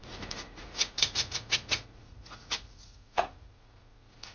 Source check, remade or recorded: remade